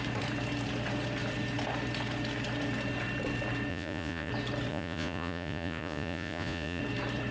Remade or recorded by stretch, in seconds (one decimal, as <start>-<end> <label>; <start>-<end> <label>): 0.0-3.7 recorded; 3.7-4.3 remade; 4.3-4.7 recorded; 4.7-6.8 remade; 6.8-7.3 recorded

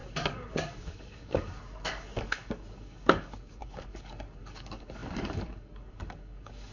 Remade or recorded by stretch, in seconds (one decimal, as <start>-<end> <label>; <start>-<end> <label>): 0.0-6.7 remade

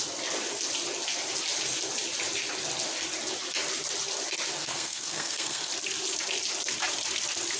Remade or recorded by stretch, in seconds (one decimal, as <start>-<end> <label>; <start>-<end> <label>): 0.0-4.6 recorded; 4.6-5.7 remade; 5.7-7.6 recorded